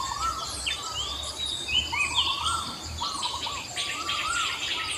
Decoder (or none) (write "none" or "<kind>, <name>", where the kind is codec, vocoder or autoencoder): vocoder, BigVGAN v2